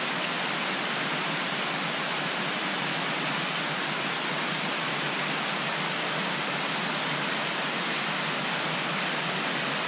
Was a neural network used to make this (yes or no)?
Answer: no